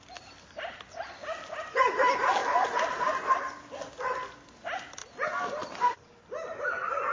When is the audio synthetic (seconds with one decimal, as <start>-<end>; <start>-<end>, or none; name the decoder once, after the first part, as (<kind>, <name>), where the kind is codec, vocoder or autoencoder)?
none